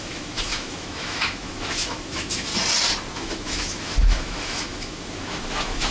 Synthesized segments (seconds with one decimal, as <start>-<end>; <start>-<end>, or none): 0.0-2.5; 3.1-5.9

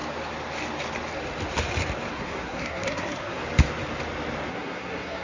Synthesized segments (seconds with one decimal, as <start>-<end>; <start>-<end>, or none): 2.1-3.4; 4.5-5.2